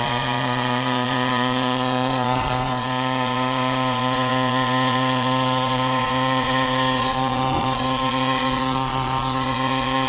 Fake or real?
fake